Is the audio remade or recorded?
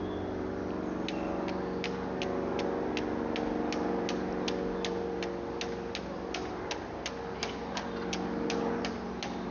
recorded